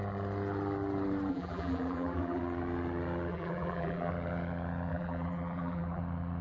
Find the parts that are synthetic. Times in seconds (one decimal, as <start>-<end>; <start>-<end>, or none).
1.3-2.4; 3.3-4.1; 4.9-6.0